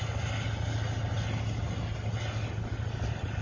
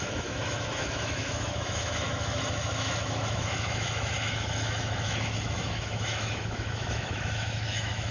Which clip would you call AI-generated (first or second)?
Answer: second